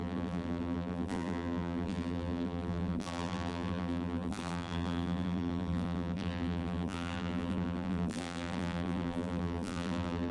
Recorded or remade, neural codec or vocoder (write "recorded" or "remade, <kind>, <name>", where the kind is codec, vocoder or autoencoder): remade, vocoder, BigVGAN v2